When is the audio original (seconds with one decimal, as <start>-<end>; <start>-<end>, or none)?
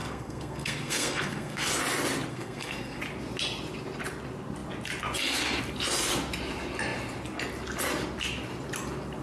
1.7-2.3; 3.0-9.2